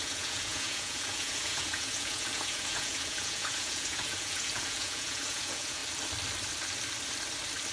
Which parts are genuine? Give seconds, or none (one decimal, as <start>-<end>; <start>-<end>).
5.8-7.7